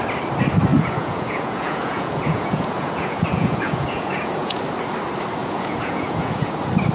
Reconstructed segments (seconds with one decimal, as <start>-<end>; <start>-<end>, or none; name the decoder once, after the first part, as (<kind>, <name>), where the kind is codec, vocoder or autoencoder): 0.7-4.6 (vocoder, Vocos); 5.4-6.5